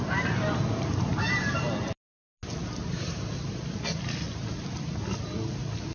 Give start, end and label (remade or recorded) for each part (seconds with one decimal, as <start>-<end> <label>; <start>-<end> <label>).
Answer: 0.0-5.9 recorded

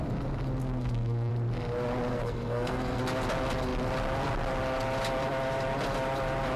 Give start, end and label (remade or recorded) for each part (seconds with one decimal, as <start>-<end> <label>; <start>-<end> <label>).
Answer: 0.0-0.6 recorded; 0.6-1.3 remade; 1.3-2.1 recorded; 2.1-3.0 remade; 3.0-6.6 recorded

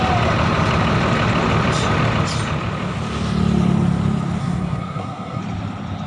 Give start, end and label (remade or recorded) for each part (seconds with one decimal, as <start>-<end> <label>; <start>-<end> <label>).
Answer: 0.0-4.4 recorded; 4.4-5.4 remade; 5.4-6.1 recorded

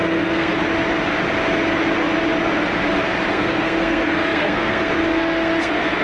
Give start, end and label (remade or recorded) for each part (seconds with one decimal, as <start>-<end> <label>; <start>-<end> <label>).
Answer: 0.0-0.6 remade; 0.6-3.3 recorded; 3.3-6.0 remade

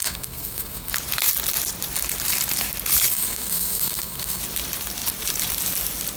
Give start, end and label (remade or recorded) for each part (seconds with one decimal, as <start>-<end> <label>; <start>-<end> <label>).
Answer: 0.0-0.9 remade; 0.9-3.1 recorded; 3.1-4.4 remade; 4.4-6.2 recorded

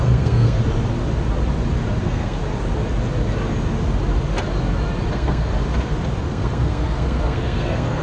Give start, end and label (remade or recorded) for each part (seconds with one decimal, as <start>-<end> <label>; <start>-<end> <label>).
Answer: 0.0-0.6 remade; 0.6-2.0 recorded; 2.0-2.4 remade; 2.4-5.1 recorded; 5.1-5.5 remade; 5.5-6.2 recorded; 6.2-8.0 remade

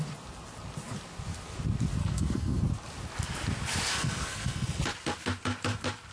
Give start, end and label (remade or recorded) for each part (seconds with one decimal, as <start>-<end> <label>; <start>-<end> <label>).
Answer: 0.0-2.0 recorded; 2.0-2.6 remade; 2.6-3.9 recorded; 3.9-4.8 remade; 4.8-6.1 recorded

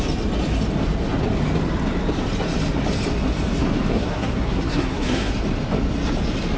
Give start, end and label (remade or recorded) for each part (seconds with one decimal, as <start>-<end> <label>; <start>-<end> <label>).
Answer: 0.0-3.9 recorded; 3.9-5.3 remade; 5.3-6.6 recorded